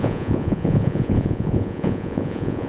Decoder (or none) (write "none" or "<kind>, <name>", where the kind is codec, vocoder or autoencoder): vocoder, Vocos